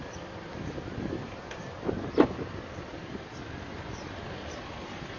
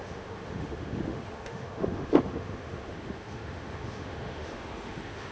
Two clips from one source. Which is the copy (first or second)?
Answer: second